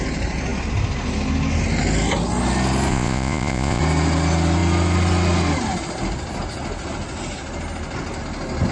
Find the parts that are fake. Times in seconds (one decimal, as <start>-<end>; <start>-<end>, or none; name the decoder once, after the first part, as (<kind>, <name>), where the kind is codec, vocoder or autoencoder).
2.9-3.8 (vocoder, Vocos)